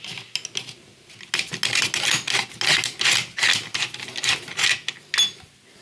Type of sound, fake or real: real